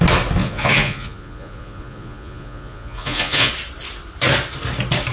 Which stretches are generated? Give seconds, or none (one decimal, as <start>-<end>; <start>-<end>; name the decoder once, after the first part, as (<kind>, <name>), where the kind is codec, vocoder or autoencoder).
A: 0.4-3.5 (vocoder, Vocos)